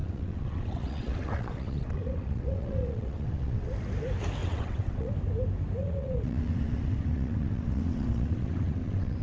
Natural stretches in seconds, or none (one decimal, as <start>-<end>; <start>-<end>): 3.7-4.4; 5.1-5.8

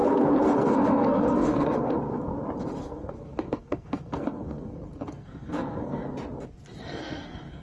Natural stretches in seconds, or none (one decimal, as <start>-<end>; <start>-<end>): 2.3-2.8; 6.0-6.8